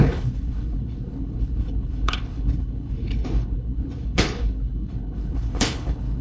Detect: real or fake fake